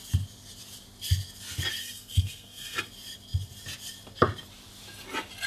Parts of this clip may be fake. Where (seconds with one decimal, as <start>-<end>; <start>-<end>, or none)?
1.8-2.9